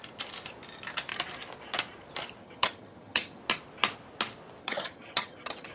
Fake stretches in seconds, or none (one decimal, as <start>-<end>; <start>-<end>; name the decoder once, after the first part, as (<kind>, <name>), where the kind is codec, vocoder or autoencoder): 2.4-3.4 (vocoder, HiFi-GAN); 4.6-5.7